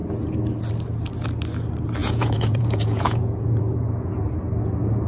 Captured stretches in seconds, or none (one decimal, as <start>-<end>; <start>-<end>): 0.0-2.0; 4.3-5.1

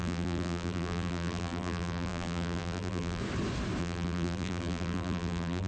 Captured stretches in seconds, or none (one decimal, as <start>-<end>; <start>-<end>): 3.2-3.8

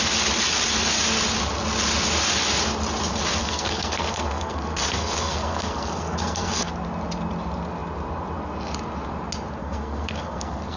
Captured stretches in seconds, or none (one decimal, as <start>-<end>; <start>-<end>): 0.0-3.4; 6.7-9.6

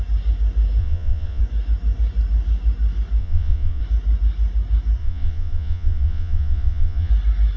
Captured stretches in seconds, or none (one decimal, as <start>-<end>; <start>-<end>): 0.0-0.8; 1.4-3.2; 3.8-5.0; 7.1-7.6